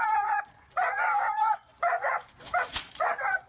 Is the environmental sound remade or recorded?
remade